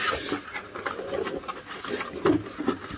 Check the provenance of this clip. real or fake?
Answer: real